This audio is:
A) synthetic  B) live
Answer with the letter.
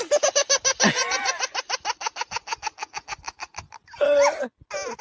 B